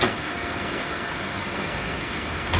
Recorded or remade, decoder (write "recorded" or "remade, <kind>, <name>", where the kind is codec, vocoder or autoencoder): remade, codec, SNAC